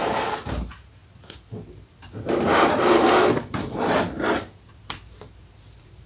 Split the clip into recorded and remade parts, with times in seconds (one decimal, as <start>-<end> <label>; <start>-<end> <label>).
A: 0.0-1.0 remade; 1.0-4.7 recorded; 4.7-6.1 remade